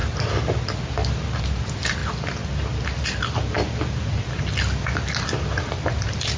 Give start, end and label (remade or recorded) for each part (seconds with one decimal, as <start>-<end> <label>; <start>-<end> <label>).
0.0-1.4 recorded; 1.4-2.0 remade; 2.0-5.6 recorded; 5.6-6.4 remade